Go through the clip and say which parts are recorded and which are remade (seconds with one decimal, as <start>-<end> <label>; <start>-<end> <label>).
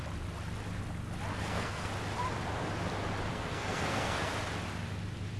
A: 0.0-1.3 recorded; 1.3-1.9 remade; 1.9-3.3 recorded; 3.3-4.3 remade; 4.3-5.4 recorded